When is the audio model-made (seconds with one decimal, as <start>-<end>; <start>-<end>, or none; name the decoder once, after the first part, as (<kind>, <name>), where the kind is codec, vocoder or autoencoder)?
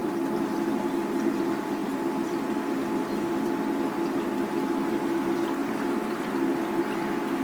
5.6-6.2 (vocoder, BigVGAN v2)